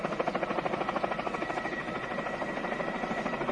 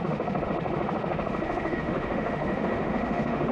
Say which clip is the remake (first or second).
second